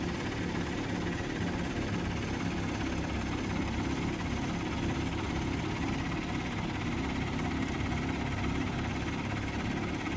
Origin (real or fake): real